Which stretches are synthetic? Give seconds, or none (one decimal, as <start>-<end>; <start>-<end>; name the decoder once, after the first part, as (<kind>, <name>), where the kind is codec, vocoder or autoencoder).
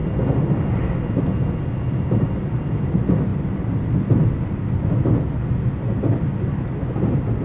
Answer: none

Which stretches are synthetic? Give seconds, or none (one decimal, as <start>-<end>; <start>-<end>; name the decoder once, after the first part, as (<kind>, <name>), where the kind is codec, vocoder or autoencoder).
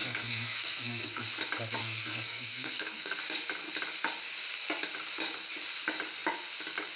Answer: 0.0-1.2 (codec, SNAC); 1.8-3.2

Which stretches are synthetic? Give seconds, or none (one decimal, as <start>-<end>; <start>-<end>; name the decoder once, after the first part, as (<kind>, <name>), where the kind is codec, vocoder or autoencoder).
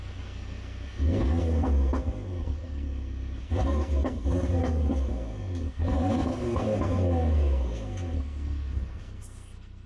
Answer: 0.0-9.9 (codec, SNAC)